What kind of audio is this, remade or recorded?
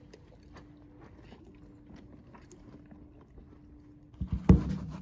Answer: recorded